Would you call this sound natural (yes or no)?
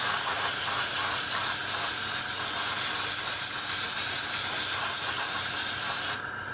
yes